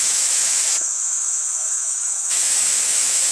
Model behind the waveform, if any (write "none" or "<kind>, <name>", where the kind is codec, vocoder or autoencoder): autoencoder, DAC-VAE